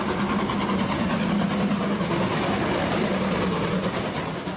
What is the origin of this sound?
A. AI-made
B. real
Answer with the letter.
B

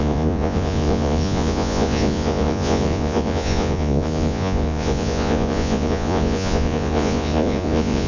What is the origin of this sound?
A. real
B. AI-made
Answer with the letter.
B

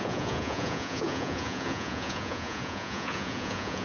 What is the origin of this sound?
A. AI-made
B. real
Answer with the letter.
A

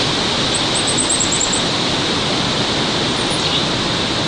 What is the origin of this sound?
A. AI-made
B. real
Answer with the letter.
B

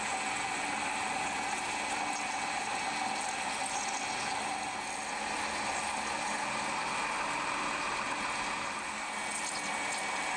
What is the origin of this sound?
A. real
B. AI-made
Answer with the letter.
A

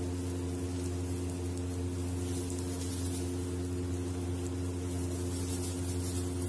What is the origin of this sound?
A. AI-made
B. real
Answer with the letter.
B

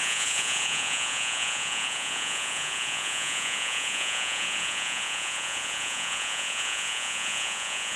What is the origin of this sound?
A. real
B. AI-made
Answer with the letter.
B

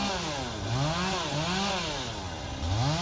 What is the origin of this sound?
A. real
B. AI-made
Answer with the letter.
A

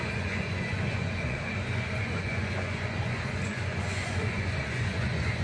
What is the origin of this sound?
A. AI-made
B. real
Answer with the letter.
A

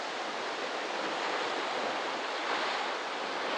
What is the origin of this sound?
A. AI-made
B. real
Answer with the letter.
B